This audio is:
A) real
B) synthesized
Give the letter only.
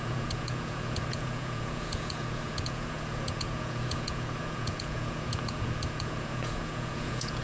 B